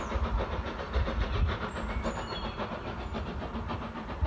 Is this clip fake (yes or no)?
no